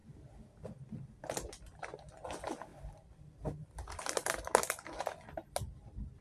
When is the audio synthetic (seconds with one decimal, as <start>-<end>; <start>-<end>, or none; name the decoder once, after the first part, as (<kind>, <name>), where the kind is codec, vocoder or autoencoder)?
2.7-4.5 (vocoder, BigVGAN v2)